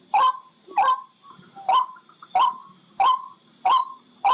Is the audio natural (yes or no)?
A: yes